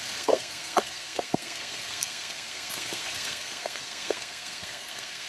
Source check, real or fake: fake